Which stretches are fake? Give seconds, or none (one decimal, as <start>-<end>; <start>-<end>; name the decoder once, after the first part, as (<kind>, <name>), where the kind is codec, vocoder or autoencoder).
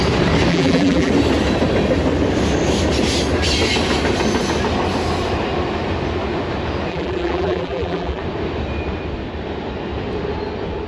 0.5-1.1 (vocoder, BigVGAN v2); 6.9-8.2